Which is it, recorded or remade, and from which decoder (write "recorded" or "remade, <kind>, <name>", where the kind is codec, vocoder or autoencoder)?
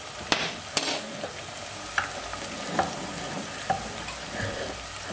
recorded